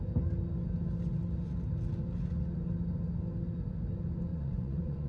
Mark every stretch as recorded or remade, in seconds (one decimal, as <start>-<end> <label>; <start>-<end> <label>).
0.0-4.3 recorded; 4.3-5.1 remade